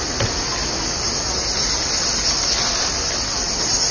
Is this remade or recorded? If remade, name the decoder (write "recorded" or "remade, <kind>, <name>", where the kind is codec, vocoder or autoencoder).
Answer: recorded